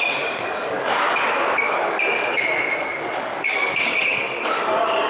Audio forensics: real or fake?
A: fake